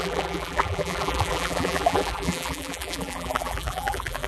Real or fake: fake